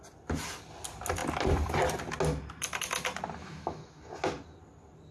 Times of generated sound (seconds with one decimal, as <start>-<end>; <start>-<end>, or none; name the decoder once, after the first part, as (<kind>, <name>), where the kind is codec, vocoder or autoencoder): 3.4-4.0 (autoencoder, DAC-VAE)

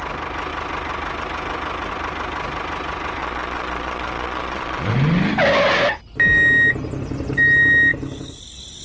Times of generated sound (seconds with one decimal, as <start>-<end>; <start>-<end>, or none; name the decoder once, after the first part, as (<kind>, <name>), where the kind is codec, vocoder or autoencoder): 3.2-4.9 (vocoder, Vocos)

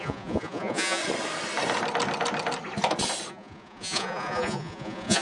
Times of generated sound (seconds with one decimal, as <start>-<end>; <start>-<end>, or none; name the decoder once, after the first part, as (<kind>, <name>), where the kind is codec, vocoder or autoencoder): 0.0-1.0 (vocoder, Vocos); 3.3-5.2

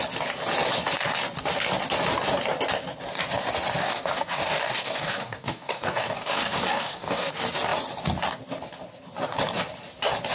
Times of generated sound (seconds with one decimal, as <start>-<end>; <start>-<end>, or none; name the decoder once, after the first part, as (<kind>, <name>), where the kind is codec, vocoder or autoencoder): 3.8-7.3 (codec, DAC)

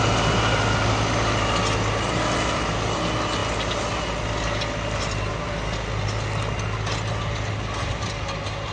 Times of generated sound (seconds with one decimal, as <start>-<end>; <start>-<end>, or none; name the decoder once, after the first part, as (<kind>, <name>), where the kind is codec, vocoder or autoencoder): none